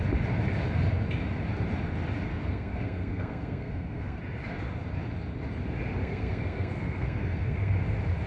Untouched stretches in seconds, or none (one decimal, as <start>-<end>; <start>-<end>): 0.0-2.3; 4.2-6.0; 7.7-8.3